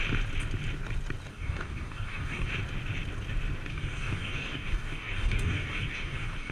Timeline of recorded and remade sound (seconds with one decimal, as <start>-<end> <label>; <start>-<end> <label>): 0.0-1.3 recorded; 1.3-2.5 remade; 2.5-3.7 recorded; 3.7-6.5 remade